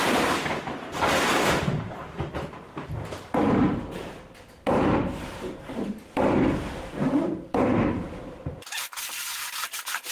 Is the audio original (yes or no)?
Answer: no